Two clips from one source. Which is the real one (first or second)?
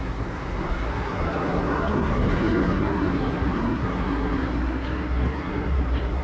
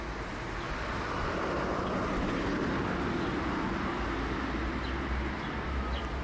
second